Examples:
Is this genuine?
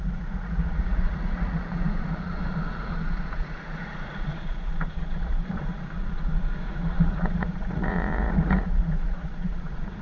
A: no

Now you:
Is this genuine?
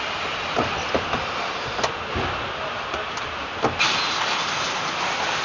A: yes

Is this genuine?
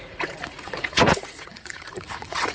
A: no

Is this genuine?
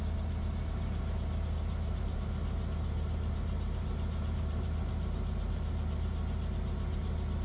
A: yes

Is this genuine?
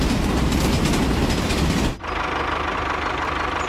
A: yes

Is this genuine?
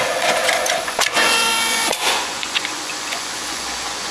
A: no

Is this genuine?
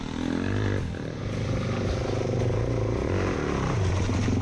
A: yes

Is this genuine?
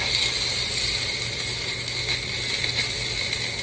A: yes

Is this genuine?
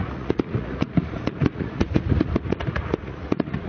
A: no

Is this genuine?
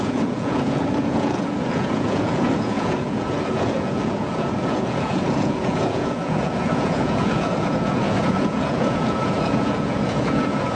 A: no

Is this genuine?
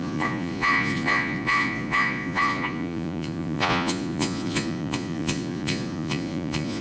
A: no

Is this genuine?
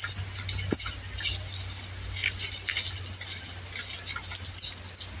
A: yes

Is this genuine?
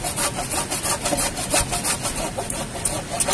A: yes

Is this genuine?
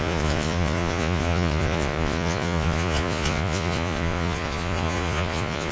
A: no